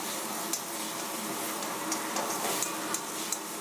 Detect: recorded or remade recorded